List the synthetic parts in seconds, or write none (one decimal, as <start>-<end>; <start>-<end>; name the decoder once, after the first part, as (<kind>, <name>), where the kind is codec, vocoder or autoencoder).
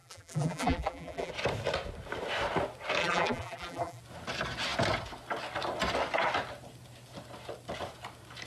0.0-1.3 (vocoder, BigVGAN v2); 3.0-4.0